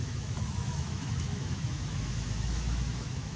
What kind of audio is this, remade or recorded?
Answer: remade